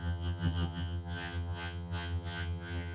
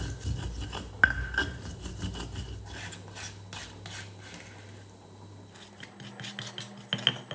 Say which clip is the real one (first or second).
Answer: second